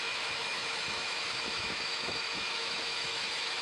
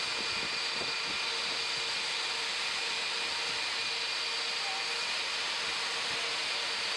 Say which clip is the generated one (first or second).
first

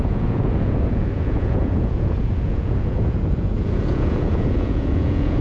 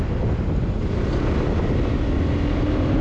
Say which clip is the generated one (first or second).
first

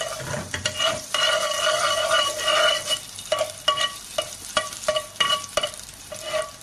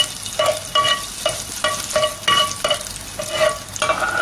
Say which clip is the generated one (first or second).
first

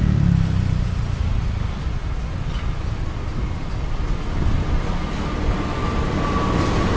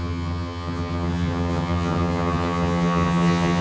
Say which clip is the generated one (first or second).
second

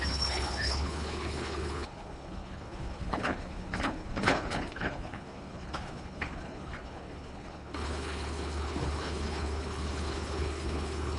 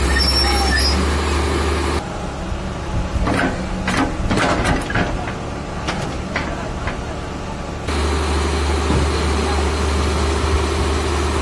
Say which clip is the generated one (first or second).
first